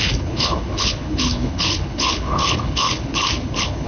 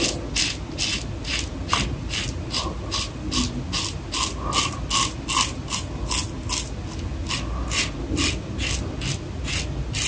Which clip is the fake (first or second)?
first